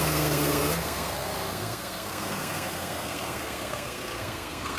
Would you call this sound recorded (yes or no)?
no